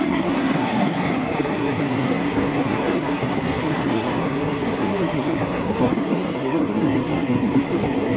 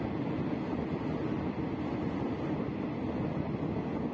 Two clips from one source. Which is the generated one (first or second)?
first